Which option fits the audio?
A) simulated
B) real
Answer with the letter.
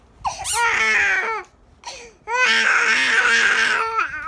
B